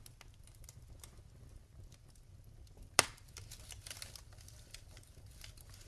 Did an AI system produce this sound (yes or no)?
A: no